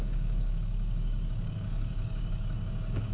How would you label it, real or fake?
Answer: fake